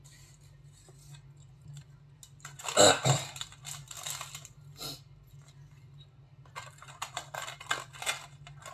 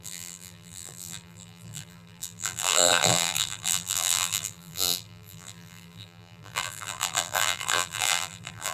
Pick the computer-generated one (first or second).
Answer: second